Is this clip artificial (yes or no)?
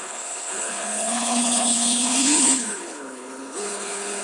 yes